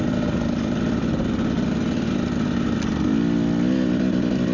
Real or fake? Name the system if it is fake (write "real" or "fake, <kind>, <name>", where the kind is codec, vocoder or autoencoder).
real